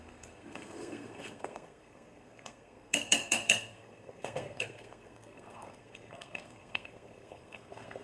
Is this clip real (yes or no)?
no